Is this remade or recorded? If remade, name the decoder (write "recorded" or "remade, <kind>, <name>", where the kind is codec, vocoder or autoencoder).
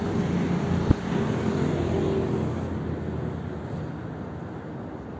recorded